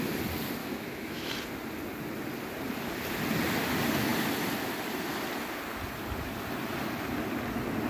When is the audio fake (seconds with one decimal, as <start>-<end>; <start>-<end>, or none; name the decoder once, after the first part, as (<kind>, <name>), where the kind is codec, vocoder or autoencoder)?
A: 0.6-1.3 (autoencoder, DAC-VAE)